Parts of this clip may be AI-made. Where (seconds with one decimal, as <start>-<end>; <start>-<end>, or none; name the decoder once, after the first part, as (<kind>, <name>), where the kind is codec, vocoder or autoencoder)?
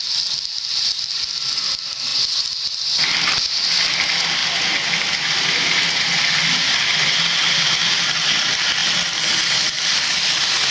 none